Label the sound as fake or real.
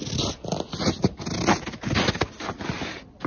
real